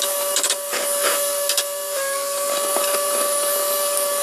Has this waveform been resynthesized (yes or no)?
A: yes